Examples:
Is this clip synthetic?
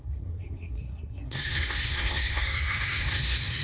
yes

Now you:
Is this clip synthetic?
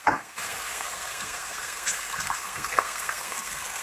yes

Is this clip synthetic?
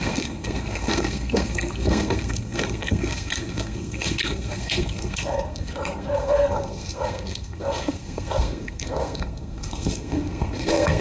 yes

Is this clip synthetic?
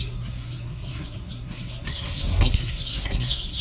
yes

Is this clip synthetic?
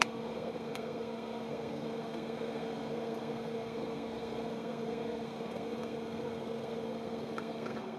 yes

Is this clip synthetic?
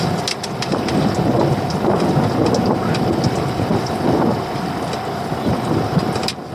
no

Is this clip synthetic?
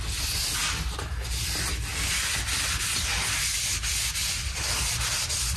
no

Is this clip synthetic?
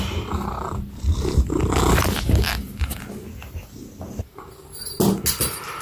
no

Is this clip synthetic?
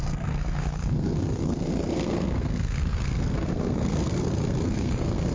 yes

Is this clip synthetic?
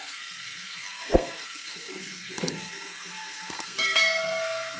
yes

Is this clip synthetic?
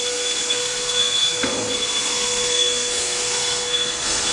yes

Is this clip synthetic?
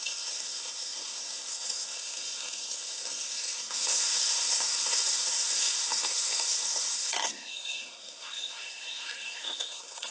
yes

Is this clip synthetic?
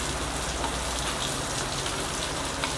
no